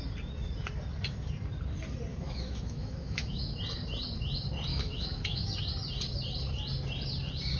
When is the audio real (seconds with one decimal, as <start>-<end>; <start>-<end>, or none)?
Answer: 0.0-2.1; 3.6-4.7; 5.5-7.6